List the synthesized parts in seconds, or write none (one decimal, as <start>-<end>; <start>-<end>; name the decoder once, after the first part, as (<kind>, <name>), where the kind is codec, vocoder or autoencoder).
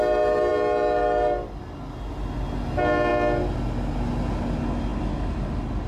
none